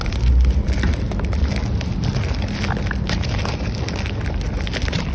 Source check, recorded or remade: recorded